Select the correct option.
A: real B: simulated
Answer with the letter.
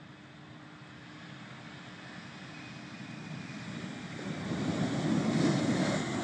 A